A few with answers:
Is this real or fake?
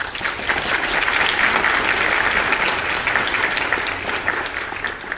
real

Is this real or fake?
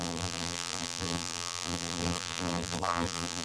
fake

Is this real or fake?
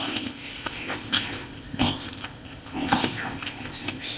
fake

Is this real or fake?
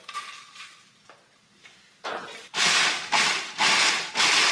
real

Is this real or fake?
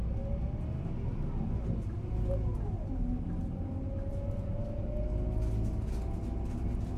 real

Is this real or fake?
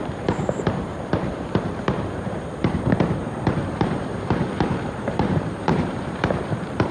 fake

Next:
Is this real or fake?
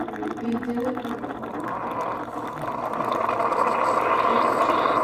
real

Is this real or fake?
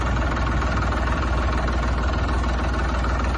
real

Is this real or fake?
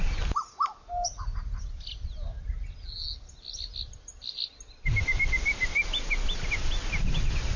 real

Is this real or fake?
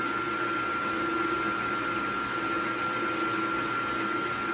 real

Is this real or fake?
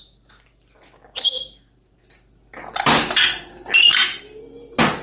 real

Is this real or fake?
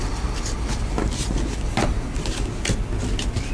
real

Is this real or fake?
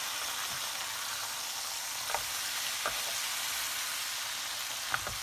real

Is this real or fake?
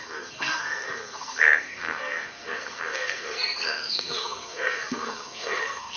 fake